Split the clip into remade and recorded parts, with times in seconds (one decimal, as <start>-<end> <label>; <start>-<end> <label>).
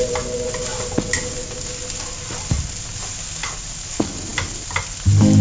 0.0-5.4 recorded